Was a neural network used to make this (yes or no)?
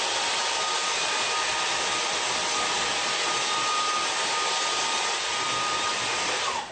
no